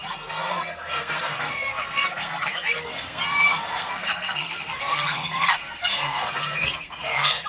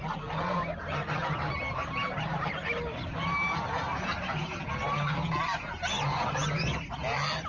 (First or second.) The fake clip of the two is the first